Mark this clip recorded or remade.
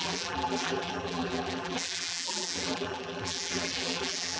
remade